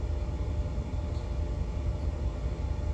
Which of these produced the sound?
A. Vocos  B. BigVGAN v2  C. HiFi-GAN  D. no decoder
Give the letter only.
D